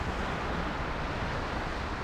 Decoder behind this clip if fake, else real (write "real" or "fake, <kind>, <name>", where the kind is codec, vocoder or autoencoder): real